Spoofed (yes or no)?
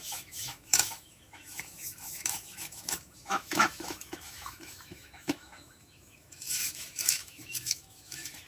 yes